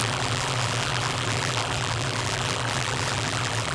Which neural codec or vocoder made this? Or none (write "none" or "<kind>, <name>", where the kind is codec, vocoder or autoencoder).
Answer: vocoder, BigVGAN v2